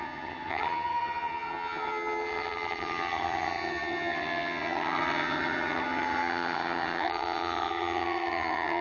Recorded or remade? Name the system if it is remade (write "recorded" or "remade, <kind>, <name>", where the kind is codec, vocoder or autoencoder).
remade, vocoder, HiFi-GAN